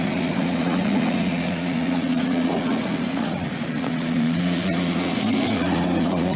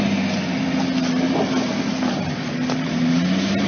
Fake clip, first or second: first